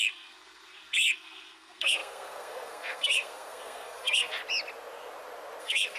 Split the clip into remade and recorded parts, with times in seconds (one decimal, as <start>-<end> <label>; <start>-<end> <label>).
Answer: 0.0-4.4 remade; 4.4-5.6 recorded; 5.6-6.0 remade